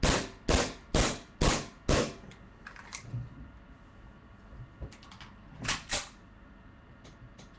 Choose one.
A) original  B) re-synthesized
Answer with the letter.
A